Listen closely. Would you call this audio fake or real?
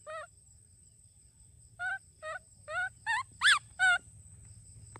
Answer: real